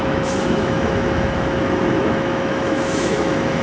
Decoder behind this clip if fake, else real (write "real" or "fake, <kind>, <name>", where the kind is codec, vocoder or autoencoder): fake, autoencoder, DAC-VAE